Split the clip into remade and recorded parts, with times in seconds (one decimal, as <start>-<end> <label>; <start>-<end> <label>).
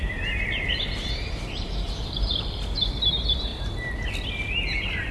0.0-3.5 remade; 3.5-5.1 recorded